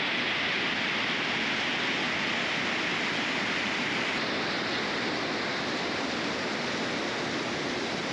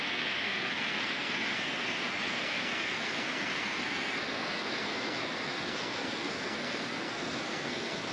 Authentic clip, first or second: first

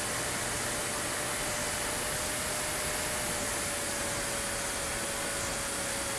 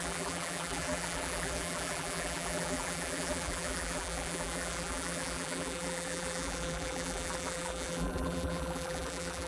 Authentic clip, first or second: first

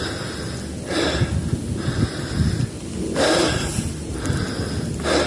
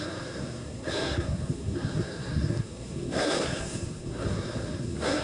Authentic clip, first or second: first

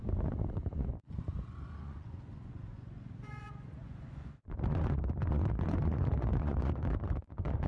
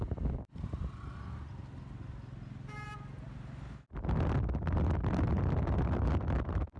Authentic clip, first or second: second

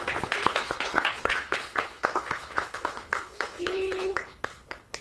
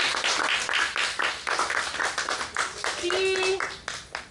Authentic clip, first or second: second